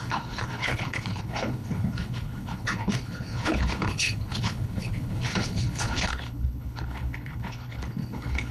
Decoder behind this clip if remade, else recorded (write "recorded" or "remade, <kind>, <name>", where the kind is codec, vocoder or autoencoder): remade, codec, HILCodec